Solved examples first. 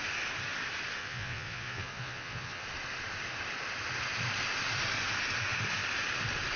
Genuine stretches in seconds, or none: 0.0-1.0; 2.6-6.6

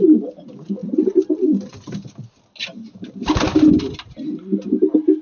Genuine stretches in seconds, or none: 0.0-5.2

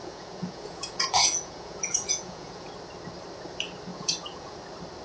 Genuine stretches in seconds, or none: 2.7-3.9; 4.6-5.0

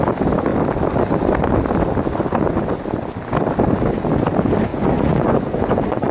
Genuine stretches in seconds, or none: 0.0-4.7

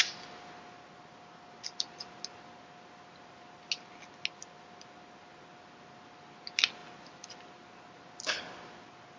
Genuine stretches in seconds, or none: 0.0-9.2

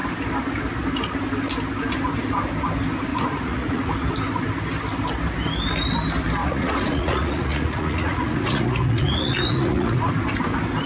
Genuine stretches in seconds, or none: 0.0-3.1; 3.9-6.4; 10.1-10.9